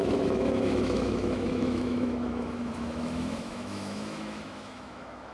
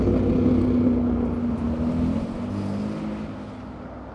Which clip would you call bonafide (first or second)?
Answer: second